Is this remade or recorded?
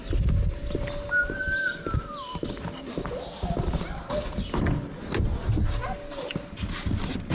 recorded